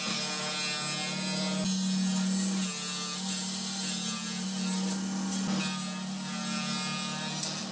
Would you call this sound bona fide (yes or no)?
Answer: yes